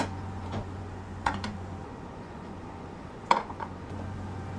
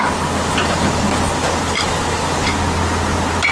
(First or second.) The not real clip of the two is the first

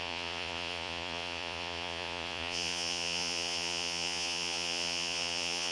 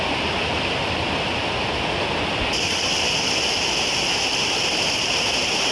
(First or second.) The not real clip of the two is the first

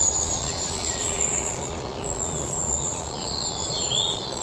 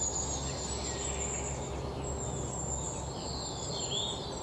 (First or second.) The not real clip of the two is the first